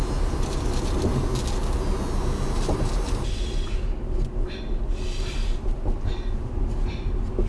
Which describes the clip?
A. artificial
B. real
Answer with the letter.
B